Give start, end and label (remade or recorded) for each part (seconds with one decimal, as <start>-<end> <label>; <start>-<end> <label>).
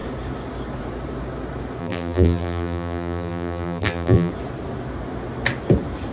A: 0.0-1.8 recorded; 1.8-4.3 remade; 4.3-6.1 recorded